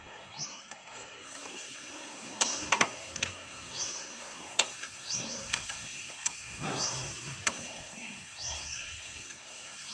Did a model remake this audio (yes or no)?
yes